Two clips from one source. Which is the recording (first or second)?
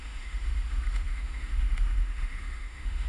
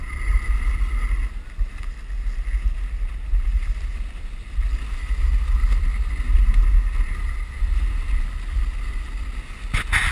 second